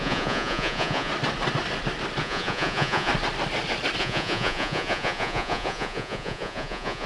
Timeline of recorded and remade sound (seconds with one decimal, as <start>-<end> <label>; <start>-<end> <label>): 0.0-1.1 remade; 1.1-2.2 recorded; 2.2-3.1 remade; 3.1-4.0 recorded; 4.0-7.1 remade

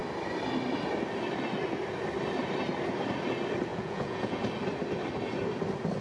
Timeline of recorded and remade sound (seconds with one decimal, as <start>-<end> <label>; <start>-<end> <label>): 0.0-3.7 recorded; 3.7-4.4 remade; 4.4-6.0 recorded

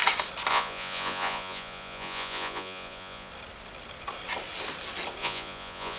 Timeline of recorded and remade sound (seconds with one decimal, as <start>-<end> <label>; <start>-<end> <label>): 0.0-0.5 recorded; 0.5-3.3 remade; 3.3-5.2 recorded; 5.2-6.0 remade

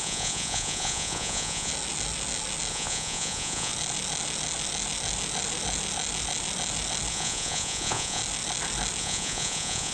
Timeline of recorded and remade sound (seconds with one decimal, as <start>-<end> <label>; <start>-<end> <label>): 0.0-1.7 remade; 1.7-2.7 recorded; 2.7-3.7 remade; 3.7-7.1 recorded; 7.1-8.2 remade; 8.2-9.0 recorded; 9.0-9.9 remade

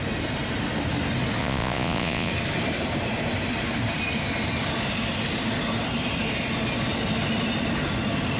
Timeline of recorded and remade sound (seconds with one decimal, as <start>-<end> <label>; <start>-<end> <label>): 0.0-1.4 recorded; 1.4-2.3 remade; 2.3-8.4 recorded

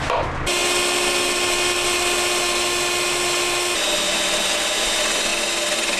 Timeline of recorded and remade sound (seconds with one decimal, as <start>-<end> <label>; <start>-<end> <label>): 0.0-6.0 recorded

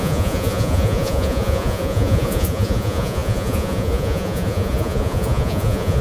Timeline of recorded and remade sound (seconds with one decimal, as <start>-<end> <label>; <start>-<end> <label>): 0.0-6.0 remade